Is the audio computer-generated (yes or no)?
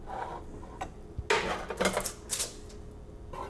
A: no